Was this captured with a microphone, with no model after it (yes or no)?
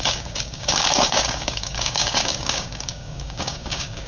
no